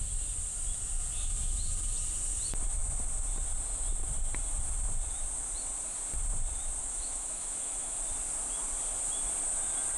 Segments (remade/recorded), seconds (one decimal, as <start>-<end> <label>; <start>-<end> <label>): 0.0-6.8 recorded; 6.8-8.0 remade; 8.0-10.0 recorded